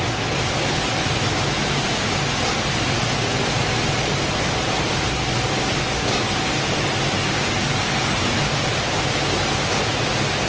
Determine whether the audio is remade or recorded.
recorded